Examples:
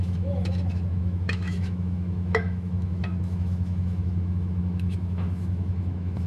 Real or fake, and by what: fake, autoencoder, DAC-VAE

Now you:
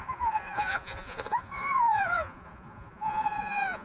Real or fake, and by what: fake, vocoder, Vocos